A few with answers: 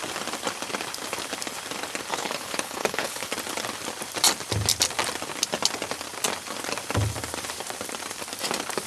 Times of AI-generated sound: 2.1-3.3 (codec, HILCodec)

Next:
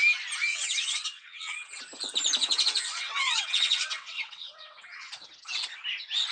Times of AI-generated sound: 0.5-1.8 (vocoder, WaveNeXt); 2.4-5.1

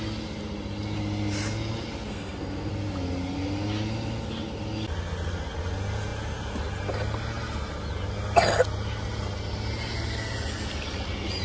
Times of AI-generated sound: 2.1-2.7 (codec, SNAC)

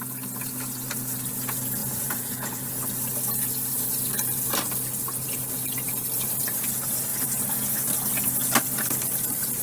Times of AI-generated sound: 1.8-2.7 (vocoder, Vocos); 7.1-7.8

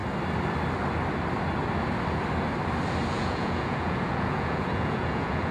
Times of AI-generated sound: 3.1-5.5 (vocoder, Vocos)